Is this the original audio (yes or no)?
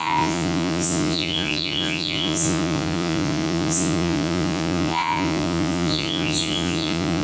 no